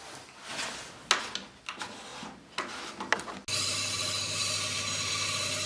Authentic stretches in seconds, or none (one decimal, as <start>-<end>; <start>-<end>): 0.0-5.7